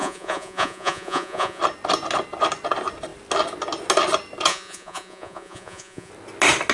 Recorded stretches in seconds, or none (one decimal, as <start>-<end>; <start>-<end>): 1.6-4.5; 6.1-6.7

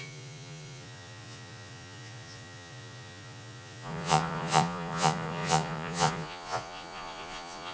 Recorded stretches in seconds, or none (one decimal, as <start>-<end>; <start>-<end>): none

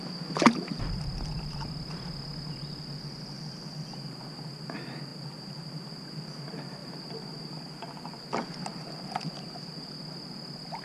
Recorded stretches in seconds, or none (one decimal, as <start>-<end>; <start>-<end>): 0.0-10.8

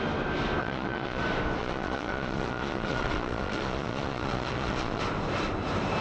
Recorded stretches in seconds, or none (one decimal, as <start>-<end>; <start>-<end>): 0.0-0.6; 1.2-1.6; 5.0-6.0

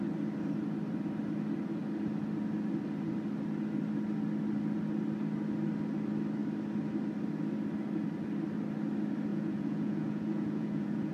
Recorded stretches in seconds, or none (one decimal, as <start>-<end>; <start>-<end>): 0.0-9.3